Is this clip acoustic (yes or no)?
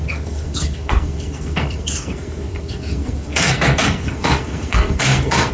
no